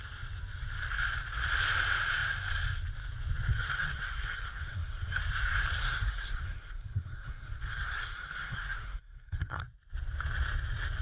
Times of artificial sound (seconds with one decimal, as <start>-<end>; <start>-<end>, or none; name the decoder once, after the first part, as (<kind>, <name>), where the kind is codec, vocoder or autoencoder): 3.5-5.2 (codec, SNAC); 5.8-9.6